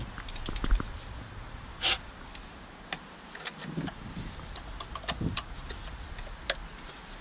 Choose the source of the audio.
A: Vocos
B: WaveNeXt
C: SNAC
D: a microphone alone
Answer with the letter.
D